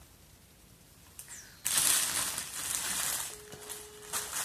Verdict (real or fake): real